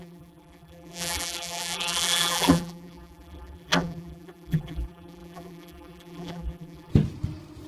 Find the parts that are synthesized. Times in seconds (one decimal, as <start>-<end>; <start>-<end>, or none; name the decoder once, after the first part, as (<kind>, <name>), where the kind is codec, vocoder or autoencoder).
0.0-6.9 (vocoder, BigVGAN v2)